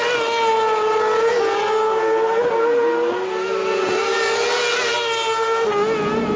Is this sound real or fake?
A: real